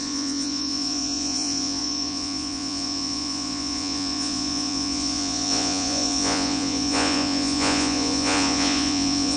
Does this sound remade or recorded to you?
remade